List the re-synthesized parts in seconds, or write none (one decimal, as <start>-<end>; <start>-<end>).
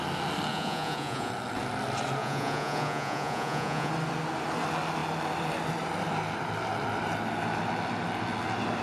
0.5-1.3; 2.2-3.9